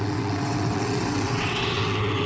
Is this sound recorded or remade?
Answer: remade